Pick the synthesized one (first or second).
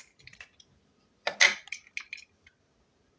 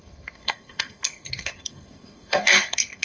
second